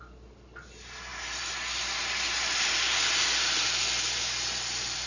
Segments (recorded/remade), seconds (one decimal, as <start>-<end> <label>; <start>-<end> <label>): 0.0-5.1 recorded